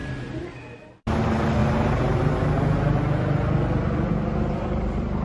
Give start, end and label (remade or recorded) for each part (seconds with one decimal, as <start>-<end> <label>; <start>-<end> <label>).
0.0-1.6 remade; 1.6-4.5 recorded; 4.5-5.2 remade